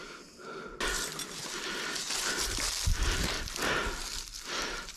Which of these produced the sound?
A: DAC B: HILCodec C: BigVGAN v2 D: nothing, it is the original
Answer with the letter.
D